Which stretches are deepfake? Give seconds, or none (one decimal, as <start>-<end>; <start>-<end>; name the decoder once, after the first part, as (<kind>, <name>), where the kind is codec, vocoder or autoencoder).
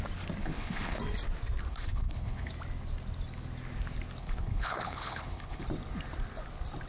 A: 0.4-1.0 (codec, HILCodec); 1.7-2.5; 4.2-5.6